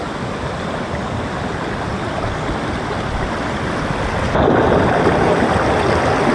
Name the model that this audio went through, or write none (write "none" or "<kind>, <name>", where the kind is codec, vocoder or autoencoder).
none